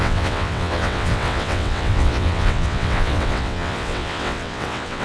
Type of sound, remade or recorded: remade